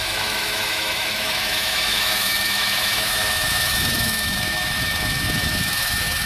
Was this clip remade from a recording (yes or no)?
yes